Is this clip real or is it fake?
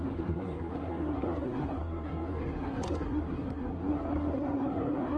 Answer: fake